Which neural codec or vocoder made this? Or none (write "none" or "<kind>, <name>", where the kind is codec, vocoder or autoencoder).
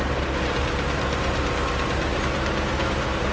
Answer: none